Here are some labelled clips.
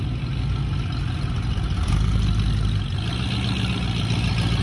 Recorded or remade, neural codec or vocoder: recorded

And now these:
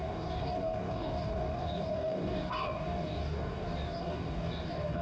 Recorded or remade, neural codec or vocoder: remade, codec, DAC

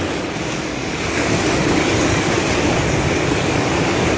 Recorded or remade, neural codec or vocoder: remade, codec, DAC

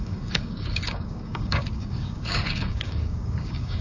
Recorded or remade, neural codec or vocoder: remade, codec, DAC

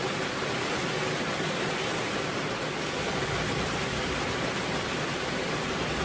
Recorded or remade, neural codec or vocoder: recorded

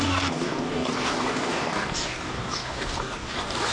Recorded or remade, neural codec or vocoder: remade, codec, DAC